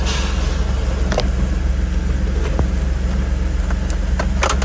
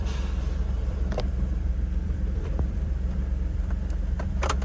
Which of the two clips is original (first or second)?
first